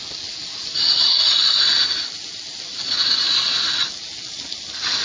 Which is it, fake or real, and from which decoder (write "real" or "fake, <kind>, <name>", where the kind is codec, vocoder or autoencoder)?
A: real